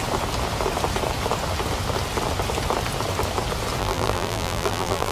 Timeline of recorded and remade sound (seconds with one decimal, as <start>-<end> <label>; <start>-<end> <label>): 0.0-3.8 recorded; 3.8-5.1 remade